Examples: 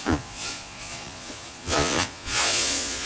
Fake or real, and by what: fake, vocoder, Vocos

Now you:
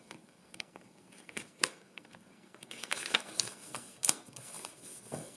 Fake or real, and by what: fake, codec, SNAC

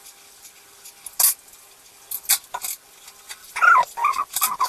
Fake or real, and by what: real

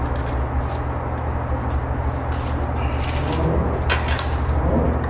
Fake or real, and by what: real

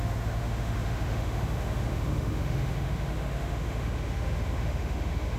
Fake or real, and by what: fake, autoencoder, DAC-VAE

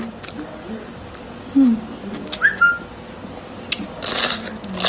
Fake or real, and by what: real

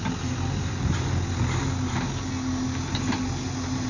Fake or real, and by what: real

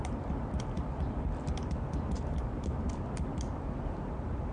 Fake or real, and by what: real